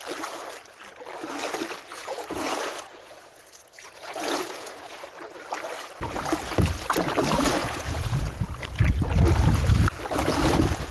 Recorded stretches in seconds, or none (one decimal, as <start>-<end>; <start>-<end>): 0.0-1.9; 5.1-7.6; 8.4-10.9